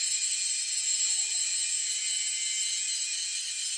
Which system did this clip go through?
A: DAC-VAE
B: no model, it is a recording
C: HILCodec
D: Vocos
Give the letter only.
B